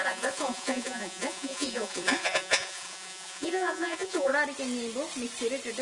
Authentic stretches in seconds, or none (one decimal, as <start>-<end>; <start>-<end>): 4.3-5.8